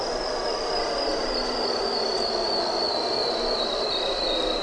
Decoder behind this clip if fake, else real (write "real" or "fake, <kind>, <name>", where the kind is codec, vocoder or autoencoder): real